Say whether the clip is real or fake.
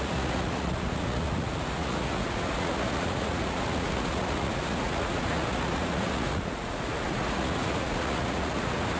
fake